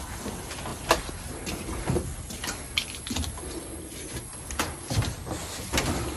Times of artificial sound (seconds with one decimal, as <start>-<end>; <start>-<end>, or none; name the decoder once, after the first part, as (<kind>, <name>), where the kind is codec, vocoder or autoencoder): 0.7-3.0 (vocoder, BigVGAN v2)